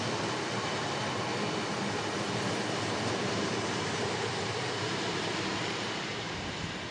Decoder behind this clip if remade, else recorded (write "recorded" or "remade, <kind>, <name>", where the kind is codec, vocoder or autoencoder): recorded